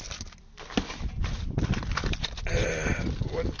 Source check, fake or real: real